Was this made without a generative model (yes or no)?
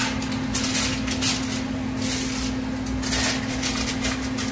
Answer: yes